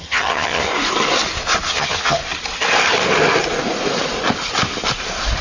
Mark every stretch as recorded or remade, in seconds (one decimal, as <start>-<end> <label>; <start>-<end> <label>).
0.0-0.7 remade; 0.7-1.7 recorded; 1.7-2.2 remade; 2.2-5.4 recorded